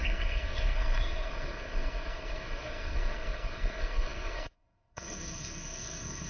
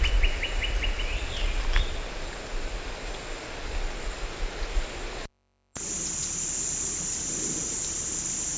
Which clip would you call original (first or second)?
second